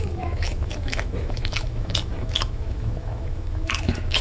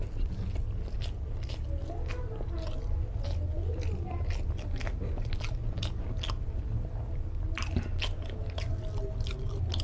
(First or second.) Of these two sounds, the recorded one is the second